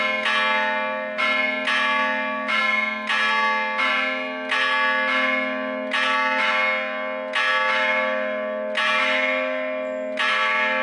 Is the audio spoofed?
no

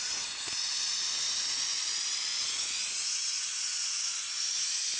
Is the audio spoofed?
yes